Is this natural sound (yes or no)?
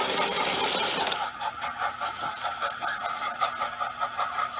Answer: yes